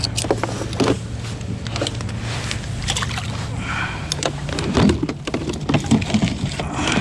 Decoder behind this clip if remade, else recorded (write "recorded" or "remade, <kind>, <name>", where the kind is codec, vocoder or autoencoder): recorded